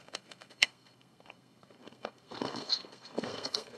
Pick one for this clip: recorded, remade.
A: remade